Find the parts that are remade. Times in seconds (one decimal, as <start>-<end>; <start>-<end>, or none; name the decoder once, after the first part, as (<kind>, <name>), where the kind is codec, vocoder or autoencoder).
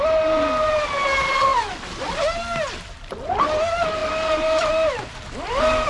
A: none